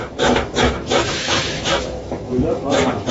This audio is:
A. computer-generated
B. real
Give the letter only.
A